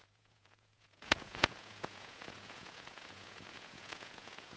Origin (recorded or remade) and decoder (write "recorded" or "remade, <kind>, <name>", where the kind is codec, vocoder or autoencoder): remade, vocoder, Vocos